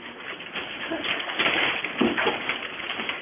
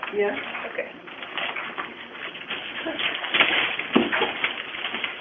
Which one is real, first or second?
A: second